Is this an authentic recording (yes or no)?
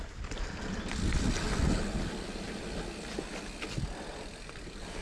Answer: yes